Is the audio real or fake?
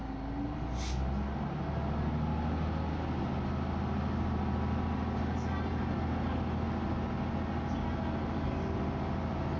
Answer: real